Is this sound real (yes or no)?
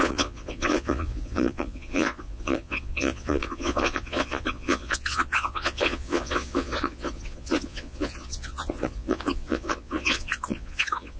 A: no